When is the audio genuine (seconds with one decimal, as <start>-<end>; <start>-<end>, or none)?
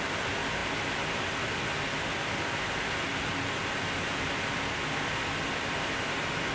0.0-6.5